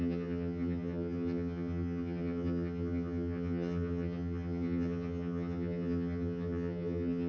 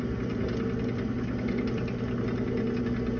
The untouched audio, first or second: second